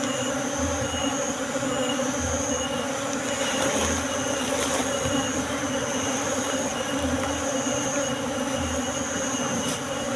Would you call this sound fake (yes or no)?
no